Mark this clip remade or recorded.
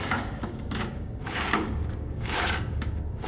remade